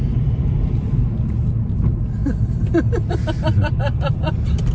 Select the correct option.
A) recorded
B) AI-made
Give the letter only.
A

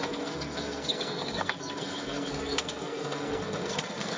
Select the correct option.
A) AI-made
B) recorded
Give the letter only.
A